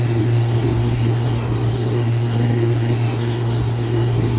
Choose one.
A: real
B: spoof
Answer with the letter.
B